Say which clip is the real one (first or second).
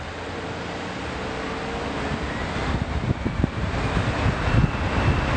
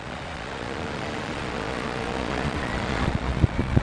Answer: first